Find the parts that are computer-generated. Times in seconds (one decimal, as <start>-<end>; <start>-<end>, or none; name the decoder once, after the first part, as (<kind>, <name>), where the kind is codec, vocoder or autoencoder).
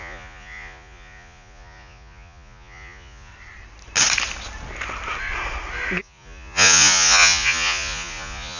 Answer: 0.0-3.3 (vocoder, Vocos); 6.0-8.6